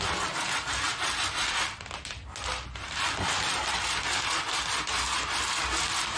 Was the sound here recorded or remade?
recorded